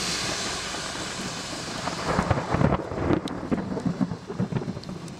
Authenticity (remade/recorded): recorded